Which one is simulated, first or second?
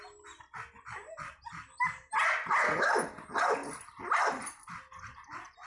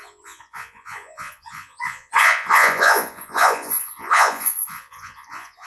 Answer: second